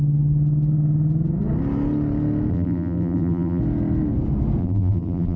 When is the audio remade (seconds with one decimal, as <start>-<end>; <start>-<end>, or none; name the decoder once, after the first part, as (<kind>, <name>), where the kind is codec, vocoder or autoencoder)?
2.5-3.6 (vocoder, BigVGAN v2); 4.6-5.4